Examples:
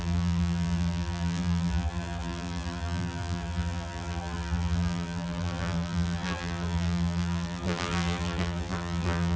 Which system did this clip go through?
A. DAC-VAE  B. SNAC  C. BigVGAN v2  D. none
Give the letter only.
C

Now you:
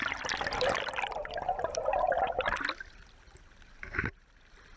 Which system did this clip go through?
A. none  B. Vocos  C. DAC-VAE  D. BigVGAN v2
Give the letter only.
D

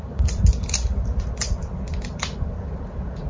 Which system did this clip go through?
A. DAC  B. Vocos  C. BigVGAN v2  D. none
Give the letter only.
C